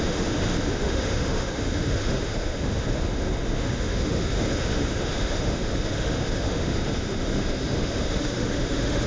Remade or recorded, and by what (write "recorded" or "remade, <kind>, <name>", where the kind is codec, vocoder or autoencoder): remade, autoencoder, DAC-VAE